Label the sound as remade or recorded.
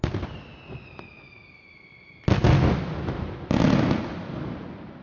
recorded